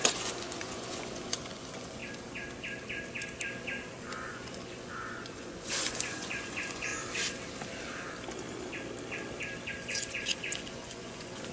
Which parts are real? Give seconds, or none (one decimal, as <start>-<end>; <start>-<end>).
2.0-3.9; 6.9-9.7